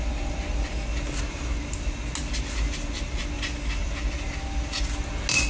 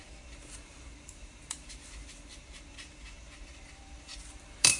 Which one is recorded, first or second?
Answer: first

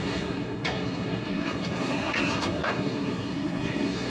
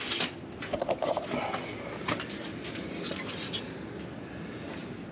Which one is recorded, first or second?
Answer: second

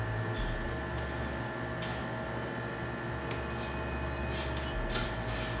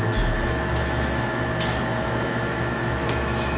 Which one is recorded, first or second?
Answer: first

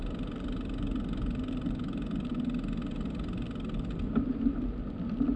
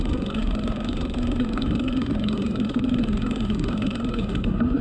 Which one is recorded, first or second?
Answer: first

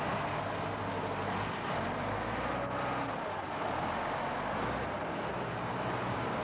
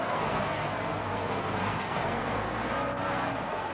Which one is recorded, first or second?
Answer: first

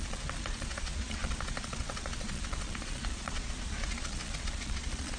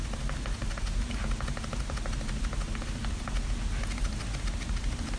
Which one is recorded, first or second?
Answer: second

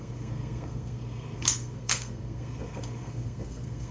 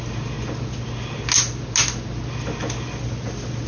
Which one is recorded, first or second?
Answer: second